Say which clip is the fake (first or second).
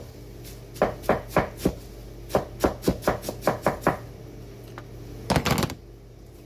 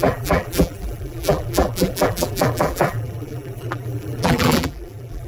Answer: second